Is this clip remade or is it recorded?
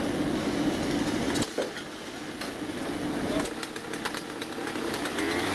recorded